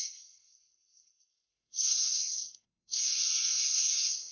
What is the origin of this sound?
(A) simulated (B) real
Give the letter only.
A